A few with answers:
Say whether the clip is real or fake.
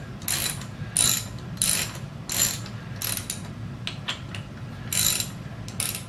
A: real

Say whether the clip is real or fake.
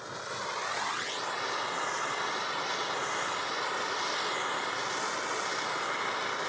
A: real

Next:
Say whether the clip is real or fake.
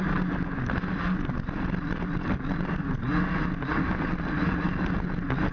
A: real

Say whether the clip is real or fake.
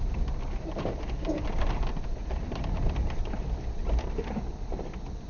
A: fake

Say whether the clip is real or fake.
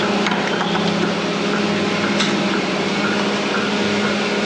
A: real